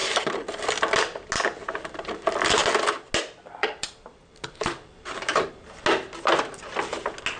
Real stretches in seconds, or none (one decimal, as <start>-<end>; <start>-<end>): 0.7-1.6; 2.2-3.6; 5.5-7.4